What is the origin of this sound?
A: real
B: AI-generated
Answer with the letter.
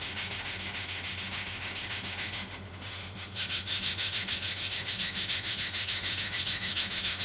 B